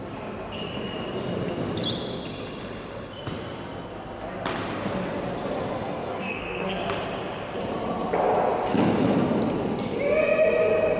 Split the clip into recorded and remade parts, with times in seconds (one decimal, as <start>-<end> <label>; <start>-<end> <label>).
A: 0.0-5.8 recorded; 5.8-6.8 remade; 6.8-11.0 recorded

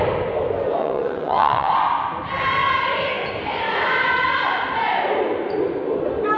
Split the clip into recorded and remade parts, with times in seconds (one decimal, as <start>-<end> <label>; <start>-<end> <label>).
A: 0.0-0.8 recorded; 0.8-1.7 remade; 1.7-6.4 recorded